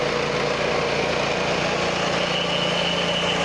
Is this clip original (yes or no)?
yes